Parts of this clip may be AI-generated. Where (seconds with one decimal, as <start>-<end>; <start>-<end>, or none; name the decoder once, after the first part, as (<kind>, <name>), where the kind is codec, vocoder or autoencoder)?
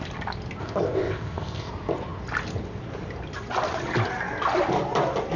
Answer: 0.6-1.7 (codec, ZipCodec)